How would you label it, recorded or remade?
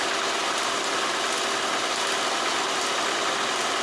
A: recorded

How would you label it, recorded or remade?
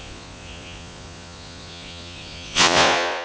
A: remade